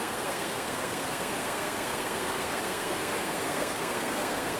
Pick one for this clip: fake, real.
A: fake